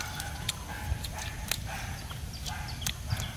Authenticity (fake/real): real